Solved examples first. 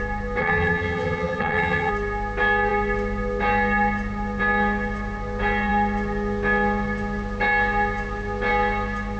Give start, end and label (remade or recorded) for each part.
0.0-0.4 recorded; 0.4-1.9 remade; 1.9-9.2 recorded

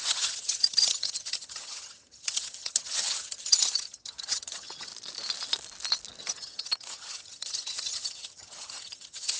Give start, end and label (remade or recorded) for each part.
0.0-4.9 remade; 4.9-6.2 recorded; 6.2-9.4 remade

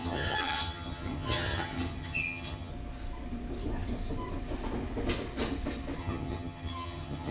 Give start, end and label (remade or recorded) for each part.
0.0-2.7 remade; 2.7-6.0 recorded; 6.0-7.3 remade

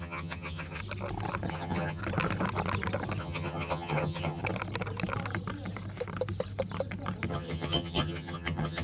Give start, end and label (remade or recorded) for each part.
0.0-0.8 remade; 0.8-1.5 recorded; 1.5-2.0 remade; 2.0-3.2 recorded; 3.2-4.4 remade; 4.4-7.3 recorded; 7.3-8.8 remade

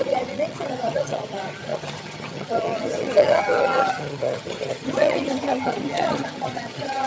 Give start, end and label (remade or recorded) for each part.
0.0-7.1 remade